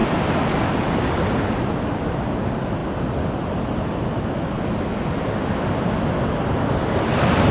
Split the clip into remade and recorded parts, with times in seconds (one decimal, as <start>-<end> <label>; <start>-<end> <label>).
0.0-7.5 recorded

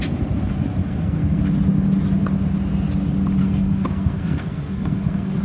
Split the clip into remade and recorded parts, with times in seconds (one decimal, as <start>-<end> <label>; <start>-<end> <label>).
0.0-0.8 recorded; 0.8-1.4 remade; 1.4-3.4 recorded; 3.4-5.4 remade

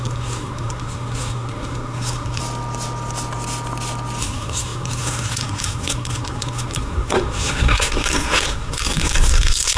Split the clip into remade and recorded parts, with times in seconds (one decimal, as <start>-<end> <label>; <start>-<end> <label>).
0.0-2.4 remade; 2.4-4.2 recorded; 4.2-9.8 remade

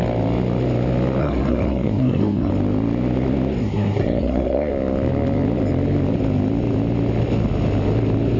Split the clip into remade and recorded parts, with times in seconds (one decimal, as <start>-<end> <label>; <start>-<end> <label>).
0.0-1.2 recorded; 1.2-2.5 remade; 2.5-3.6 recorded; 3.6-4.7 remade; 4.7-8.4 recorded

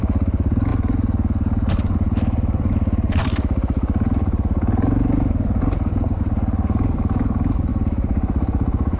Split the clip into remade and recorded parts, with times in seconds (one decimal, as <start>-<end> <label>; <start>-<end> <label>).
0.0-9.0 recorded

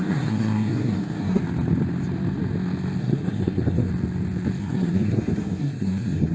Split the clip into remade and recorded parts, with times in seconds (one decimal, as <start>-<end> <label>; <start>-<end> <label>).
0.0-1.4 remade; 1.4-3.0 recorded; 3.0-3.9 remade; 3.9-4.6 recorded; 4.6-6.3 remade

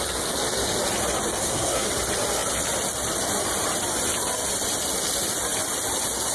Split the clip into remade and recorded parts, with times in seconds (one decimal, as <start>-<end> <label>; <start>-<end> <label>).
0.0-1.4 recorded; 1.4-1.9 remade; 1.9-6.3 recorded

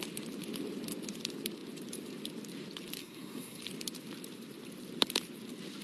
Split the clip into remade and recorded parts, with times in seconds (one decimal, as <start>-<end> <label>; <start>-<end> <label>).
0.0-3.0 recorded; 3.0-3.6 remade; 3.6-5.8 recorded